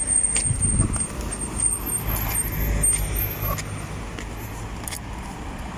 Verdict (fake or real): real